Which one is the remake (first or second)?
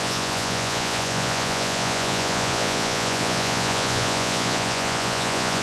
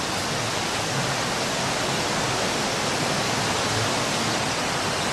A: first